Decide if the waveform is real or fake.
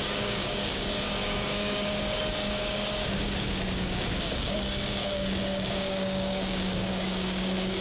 fake